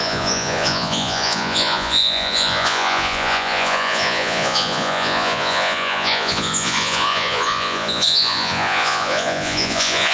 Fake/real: fake